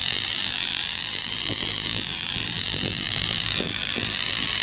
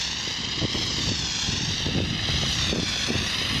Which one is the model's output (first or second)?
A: first